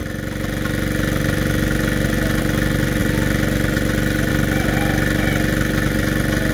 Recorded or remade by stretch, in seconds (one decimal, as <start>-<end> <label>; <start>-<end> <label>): 0.0-6.5 recorded